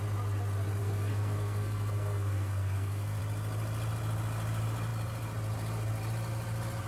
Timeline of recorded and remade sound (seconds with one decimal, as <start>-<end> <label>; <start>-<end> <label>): 0.0-0.8 recorded; 0.8-3.2 remade; 3.2-6.9 recorded